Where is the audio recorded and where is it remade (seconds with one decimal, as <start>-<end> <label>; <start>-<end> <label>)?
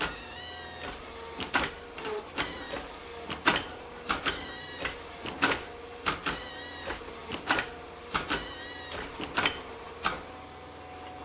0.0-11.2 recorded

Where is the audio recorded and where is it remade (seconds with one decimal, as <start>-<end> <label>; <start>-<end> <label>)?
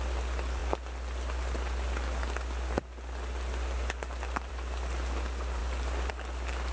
0.0-6.7 recorded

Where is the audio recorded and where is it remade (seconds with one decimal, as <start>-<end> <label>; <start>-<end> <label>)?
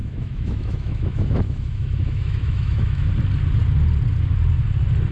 0.0-3.1 remade; 3.1-5.1 recorded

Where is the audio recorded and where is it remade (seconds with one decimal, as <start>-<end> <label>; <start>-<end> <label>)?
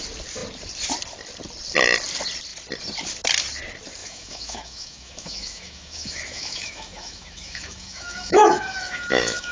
0.0-4.0 recorded; 4.0-9.5 remade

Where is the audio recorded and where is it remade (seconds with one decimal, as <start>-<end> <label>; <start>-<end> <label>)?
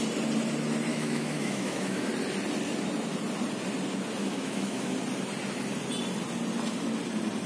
0.0-0.9 recorded; 0.9-2.1 remade; 2.1-4.2 recorded; 4.2-4.9 remade; 4.9-7.5 recorded